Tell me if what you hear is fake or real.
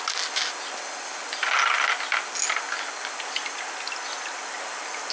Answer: real